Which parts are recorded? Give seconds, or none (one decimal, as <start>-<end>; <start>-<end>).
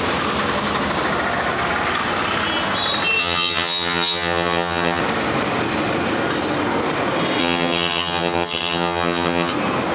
0.0-3.2; 5.0-7.4; 9.5-9.9